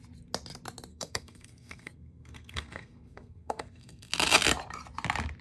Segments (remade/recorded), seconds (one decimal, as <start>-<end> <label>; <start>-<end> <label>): 0.0-0.9 recorded; 0.9-4.1 remade; 4.1-5.4 recorded